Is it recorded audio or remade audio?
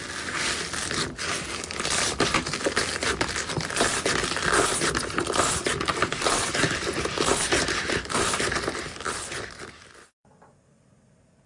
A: recorded